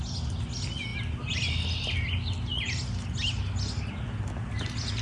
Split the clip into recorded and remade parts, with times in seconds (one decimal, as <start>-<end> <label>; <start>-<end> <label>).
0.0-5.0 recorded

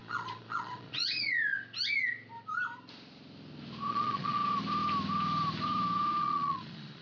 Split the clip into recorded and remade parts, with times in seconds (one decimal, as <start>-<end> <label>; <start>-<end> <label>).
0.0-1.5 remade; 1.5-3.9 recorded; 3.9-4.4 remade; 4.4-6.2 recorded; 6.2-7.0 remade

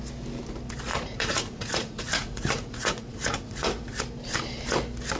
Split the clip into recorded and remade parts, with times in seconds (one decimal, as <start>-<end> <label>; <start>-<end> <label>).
0.0-0.9 recorded; 0.9-4.0 remade; 4.0-5.2 recorded

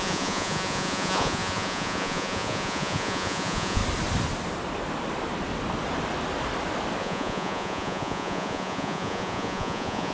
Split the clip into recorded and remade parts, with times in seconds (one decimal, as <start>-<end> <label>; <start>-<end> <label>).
0.0-3.8 remade; 3.8-7.0 recorded; 7.0-10.1 remade